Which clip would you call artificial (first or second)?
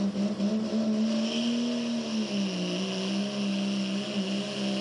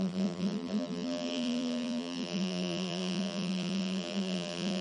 second